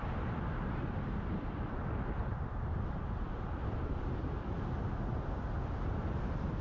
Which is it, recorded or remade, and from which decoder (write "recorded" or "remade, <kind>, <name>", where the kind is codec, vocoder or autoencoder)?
recorded